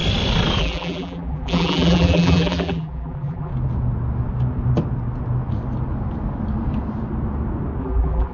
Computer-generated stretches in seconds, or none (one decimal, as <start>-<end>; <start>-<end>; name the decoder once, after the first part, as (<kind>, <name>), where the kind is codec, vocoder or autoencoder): 0.6-3.5 (vocoder, BigVGAN v2); 7.8-8.3